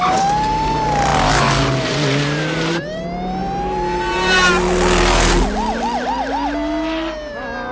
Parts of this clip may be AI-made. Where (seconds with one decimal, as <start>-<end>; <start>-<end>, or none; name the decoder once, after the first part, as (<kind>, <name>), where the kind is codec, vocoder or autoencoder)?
none